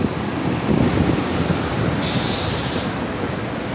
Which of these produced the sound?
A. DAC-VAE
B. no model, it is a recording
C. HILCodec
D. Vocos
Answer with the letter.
B